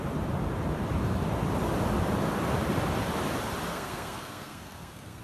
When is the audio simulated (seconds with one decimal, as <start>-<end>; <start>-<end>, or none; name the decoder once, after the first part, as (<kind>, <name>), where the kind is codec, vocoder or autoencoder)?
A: 3.7-5.2 (codec, SNAC)